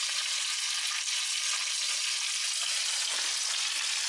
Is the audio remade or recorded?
recorded